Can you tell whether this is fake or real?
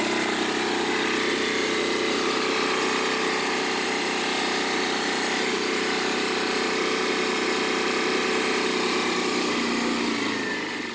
real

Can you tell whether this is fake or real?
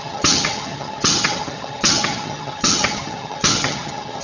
fake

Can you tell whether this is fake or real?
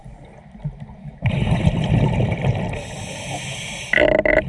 real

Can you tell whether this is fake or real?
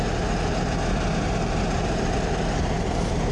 real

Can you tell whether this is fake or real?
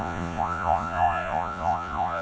fake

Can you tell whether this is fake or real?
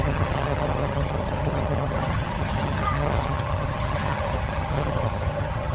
fake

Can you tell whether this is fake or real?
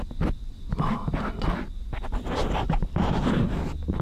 real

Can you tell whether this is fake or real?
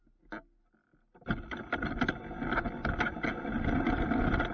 real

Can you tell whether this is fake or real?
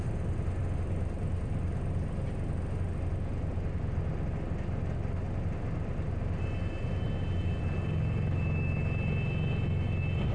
real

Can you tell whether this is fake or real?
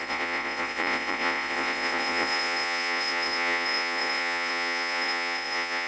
fake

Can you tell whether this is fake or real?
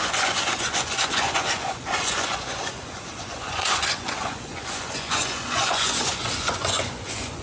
fake